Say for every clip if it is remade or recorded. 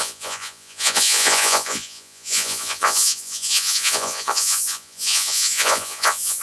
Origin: remade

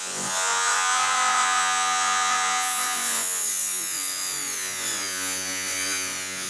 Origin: remade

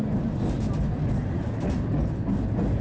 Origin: recorded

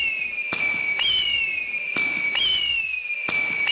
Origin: recorded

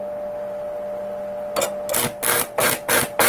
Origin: recorded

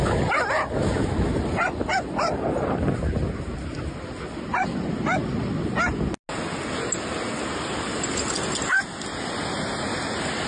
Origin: recorded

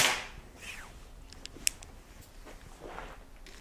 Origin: recorded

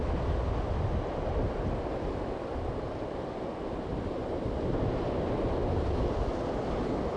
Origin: recorded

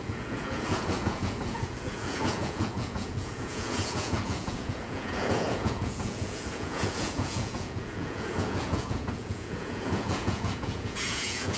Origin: remade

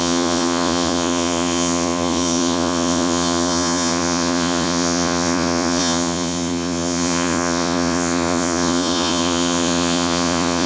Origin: remade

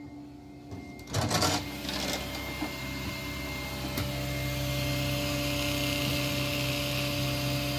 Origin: recorded